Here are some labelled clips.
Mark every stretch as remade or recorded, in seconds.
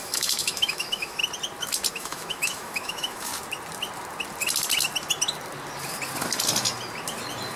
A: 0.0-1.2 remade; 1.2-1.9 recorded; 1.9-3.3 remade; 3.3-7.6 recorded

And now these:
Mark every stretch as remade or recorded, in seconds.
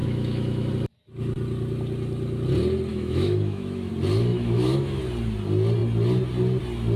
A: 0.0-0.7 remade; 0.7-2.9 recorded; 2.9-3.9 remade; 3.9-4.3 recorded; 4.3-5.0 remade; 5.0-7.0 recorded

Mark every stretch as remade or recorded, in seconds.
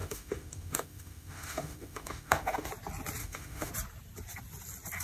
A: 0.0-2.7 remade; 2.7-3.2 recorded; 3.2-3.7 remade; 3.7-5.0 recorded